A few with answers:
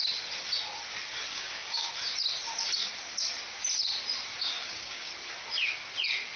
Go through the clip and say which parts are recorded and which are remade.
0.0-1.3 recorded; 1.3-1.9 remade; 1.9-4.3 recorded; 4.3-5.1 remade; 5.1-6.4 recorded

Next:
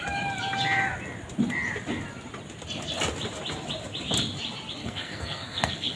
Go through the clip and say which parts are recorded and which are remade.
0.0-4.8 recorded; 4.8-6.0 remade